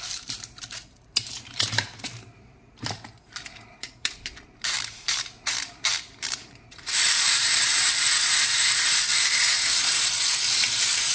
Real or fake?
fake